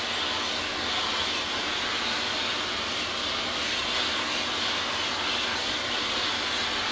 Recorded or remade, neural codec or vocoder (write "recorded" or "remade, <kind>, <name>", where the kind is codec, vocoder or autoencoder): recorded